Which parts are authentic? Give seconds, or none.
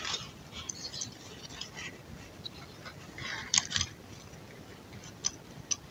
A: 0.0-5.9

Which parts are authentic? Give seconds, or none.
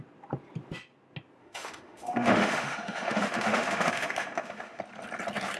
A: 0.0-1.4; 4.8-5.6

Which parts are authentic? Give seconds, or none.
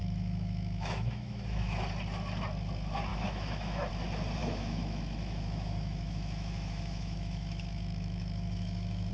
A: 1.8-3.1; 3.9-4.4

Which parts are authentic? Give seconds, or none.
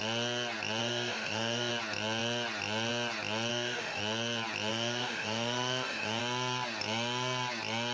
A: 0.0-0.8; 1.7-3.5; 4.0-4.7; 6.2-7.9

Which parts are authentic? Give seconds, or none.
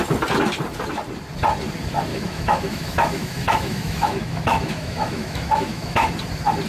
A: 0.0-2.1; 6.1-6.7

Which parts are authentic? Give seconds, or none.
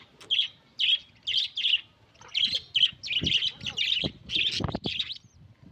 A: 0.0-5.7